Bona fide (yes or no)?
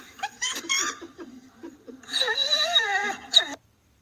no